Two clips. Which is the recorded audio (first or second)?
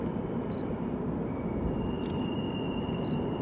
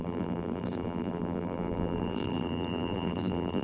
first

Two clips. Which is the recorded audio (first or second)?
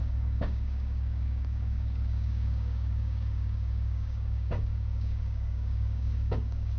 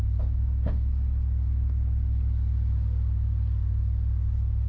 second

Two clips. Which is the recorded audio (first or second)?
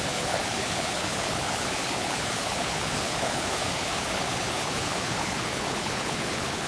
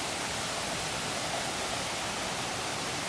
second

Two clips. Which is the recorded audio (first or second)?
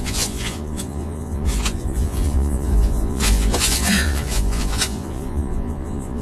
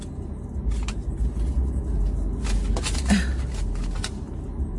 second